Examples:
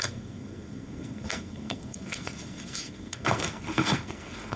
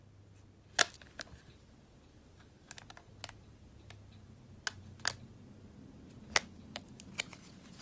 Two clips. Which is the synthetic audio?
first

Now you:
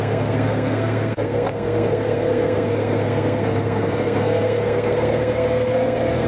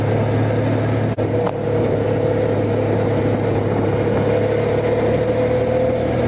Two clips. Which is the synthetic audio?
first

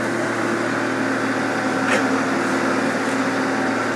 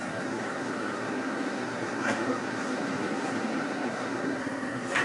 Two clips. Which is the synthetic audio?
second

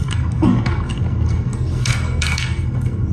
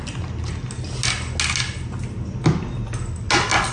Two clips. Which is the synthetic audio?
first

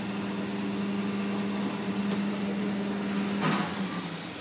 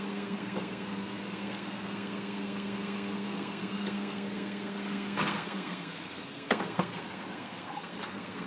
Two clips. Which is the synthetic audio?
second